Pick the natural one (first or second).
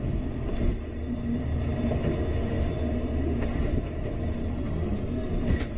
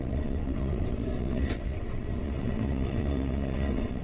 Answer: first